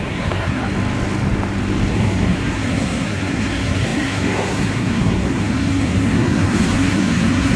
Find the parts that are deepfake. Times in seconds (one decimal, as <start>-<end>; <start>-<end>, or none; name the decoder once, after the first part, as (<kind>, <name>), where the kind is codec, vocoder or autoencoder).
0.0-0.6 (codec, SNAC); 1.9-7.6